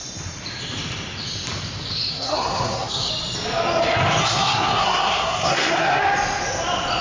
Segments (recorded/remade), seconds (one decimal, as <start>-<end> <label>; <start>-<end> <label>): 0.0-2.1 recorded; 2.1-3.1 remade; 3.1-4.2 recorded; 4.2-6.0 remade; 6.0-7.0 recorded